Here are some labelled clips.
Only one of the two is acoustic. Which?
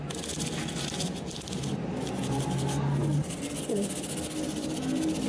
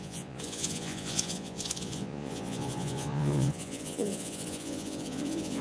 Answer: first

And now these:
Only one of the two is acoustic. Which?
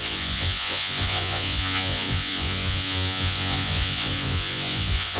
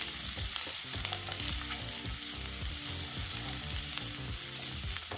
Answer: second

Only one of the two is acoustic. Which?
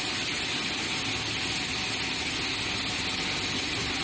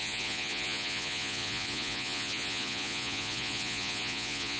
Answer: first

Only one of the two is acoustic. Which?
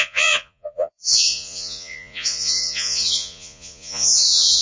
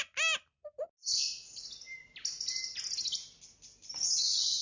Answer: second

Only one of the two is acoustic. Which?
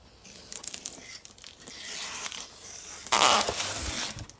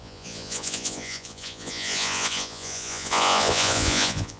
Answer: first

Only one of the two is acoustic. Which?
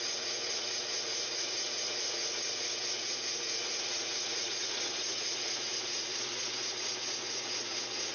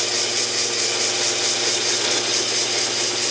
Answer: second